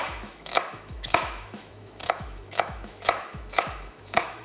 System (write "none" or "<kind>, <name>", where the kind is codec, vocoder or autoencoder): autoencoder, DAC-VAE